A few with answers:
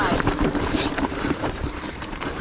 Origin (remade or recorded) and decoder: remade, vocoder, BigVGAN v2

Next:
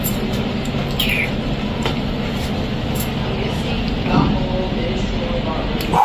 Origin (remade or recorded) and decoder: recorded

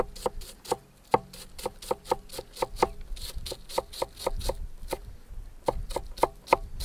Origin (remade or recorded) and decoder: recorded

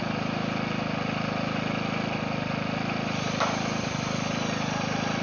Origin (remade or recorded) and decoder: recorded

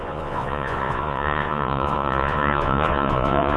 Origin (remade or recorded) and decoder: remade, vocoder, Vocos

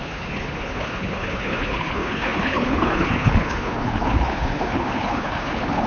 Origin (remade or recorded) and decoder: remade, codec, HILCodec